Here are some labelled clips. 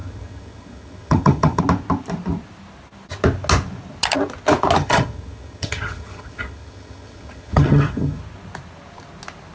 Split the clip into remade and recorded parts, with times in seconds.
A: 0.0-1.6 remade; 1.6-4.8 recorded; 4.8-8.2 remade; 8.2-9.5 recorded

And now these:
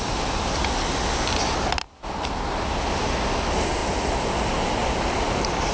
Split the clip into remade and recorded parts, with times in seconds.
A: 0.0-5.7 recorded